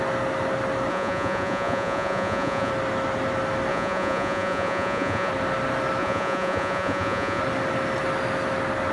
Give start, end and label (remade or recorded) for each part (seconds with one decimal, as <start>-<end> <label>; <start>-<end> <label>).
0.0-0.9 recorded; 0.9-2.7 remade; 2.7-3.7 recorded; 3.7-5.3 remade; 5.3-6.0 recorded; 6.0-7.4 remade; 7.4-8.9 recorded